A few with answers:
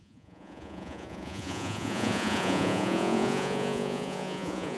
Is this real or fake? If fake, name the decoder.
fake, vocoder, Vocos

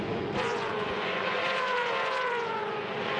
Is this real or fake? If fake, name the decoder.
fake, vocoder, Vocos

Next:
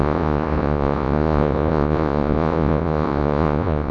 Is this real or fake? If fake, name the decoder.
fake, vocoder, Vocos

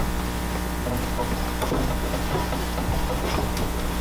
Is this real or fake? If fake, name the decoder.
real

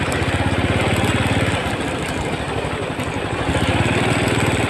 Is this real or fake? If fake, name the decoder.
real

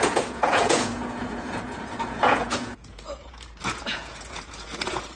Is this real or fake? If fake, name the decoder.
fake, vocoder, Vocos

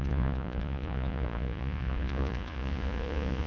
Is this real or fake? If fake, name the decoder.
fake, vocoder, Vocos